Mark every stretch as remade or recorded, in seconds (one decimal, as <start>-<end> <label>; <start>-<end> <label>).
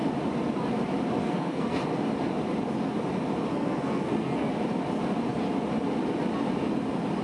0.0-1.2 recorded; 1.2-1.8 remade; 1.8-3.5 recorded; 3.5-4.5 remade; 4.5-7.2 recorded